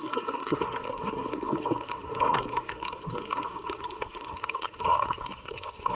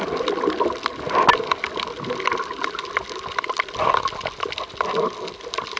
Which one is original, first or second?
second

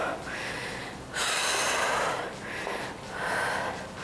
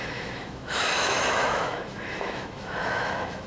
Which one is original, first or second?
first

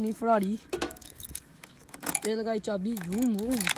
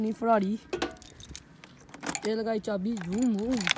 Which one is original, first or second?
second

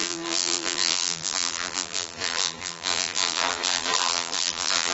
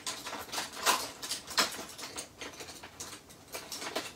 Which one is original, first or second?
second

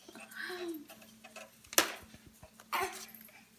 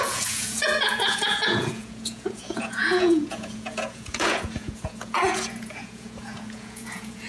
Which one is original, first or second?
first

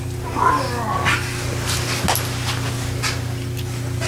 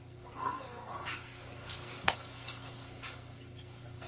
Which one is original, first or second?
first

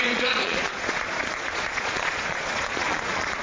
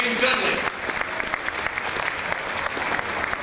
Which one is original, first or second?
second